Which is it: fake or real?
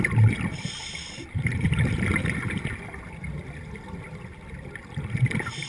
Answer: real